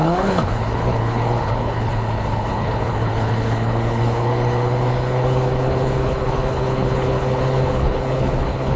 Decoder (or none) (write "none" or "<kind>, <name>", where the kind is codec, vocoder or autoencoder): codec, HILCodec